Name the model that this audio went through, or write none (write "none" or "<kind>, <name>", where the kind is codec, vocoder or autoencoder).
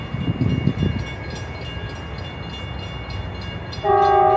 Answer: none